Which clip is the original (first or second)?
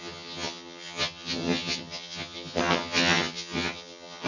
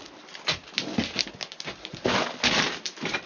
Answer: second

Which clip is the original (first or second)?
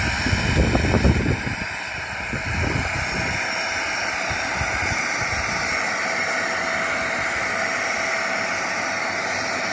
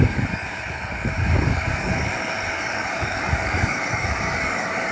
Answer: first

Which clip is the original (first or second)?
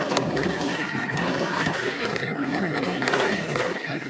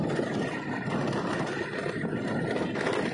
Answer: second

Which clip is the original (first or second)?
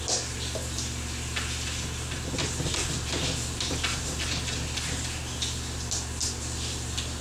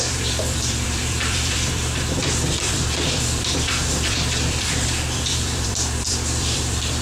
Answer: first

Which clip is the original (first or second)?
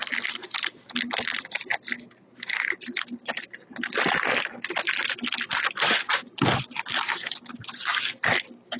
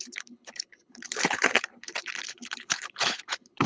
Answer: first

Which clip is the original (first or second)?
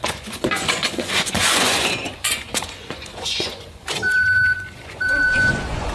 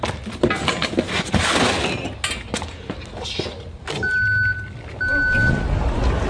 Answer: second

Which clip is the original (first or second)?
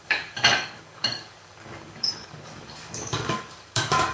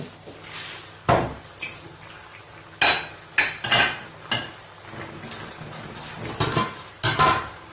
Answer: second